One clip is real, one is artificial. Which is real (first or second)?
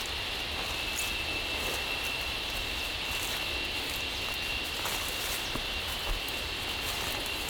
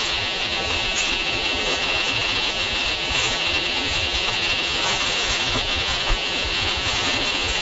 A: first